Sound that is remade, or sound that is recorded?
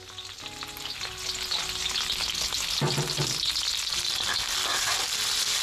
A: recorded